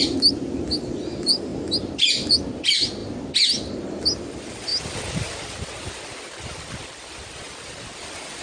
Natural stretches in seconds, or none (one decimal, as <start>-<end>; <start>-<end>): 0.0-8.4